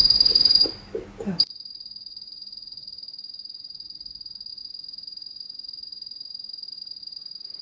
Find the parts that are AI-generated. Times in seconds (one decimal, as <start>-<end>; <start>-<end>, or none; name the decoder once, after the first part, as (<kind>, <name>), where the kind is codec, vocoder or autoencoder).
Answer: none